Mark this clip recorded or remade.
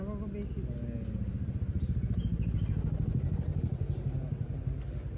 recorded